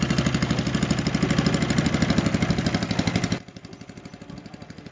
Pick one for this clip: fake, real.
real